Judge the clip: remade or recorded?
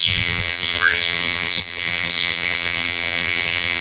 remade